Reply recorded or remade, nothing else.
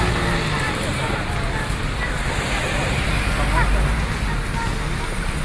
recorded